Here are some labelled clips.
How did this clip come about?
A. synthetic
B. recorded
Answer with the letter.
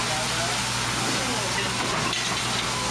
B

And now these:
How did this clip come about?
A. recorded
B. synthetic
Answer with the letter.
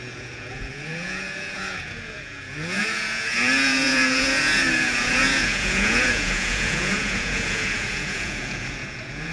B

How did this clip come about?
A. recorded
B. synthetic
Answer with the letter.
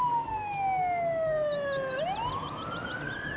A